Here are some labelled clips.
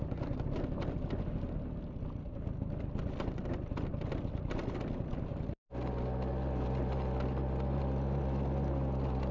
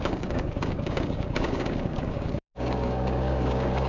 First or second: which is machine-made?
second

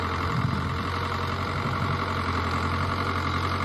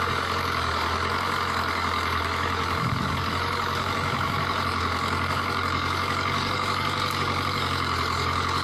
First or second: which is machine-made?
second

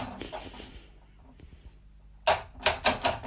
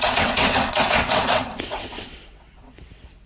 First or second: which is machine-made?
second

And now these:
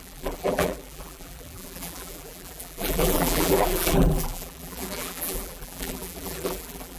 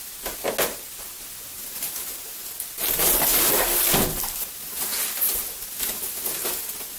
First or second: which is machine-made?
first